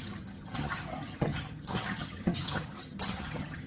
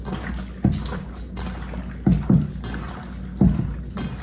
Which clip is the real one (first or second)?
second